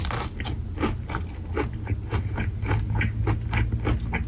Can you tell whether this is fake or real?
real